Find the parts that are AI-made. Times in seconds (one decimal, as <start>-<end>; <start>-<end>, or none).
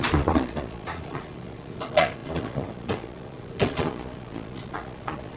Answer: 0.0-5.4